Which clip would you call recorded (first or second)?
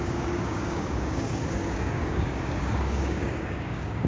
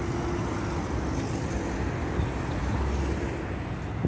second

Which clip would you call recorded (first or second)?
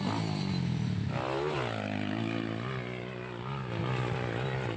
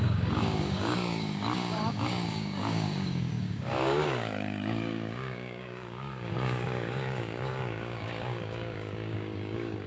first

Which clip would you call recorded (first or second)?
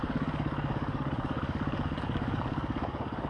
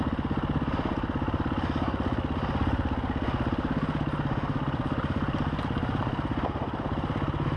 second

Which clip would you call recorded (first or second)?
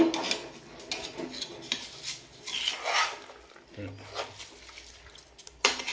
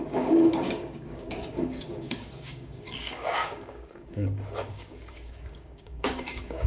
first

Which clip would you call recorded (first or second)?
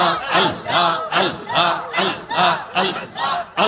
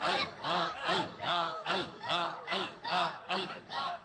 first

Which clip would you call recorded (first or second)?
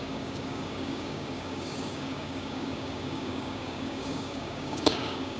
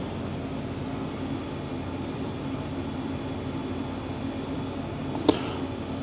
second